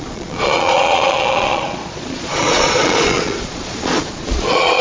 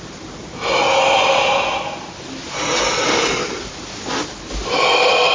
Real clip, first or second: second